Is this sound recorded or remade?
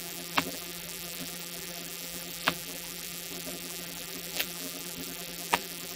remade